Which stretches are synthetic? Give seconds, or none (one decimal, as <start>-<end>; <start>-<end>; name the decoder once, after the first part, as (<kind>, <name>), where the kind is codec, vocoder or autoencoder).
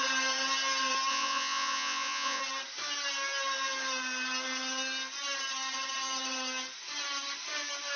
1.1-2.4 (vocoder, Vocos)